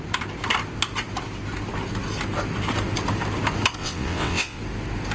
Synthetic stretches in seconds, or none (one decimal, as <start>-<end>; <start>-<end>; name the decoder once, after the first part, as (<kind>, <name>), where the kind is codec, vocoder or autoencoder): 3.8-4.6 (vocoder, WaveNeXt)